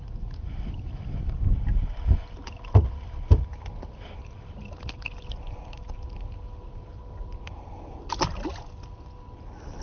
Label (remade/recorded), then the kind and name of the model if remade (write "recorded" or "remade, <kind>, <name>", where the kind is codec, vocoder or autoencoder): recorded